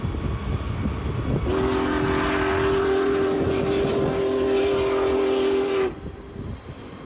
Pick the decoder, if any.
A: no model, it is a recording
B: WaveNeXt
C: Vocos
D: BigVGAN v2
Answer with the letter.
A